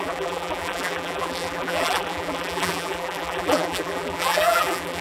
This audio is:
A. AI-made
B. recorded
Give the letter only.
A